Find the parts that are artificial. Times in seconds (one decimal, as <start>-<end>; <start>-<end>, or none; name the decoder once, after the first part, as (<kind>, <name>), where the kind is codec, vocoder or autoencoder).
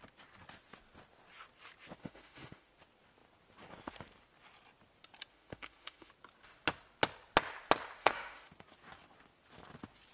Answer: 2.0-2.7 (autoencoder, DAC-VAE); 5.3-6.1; 8.0-8.5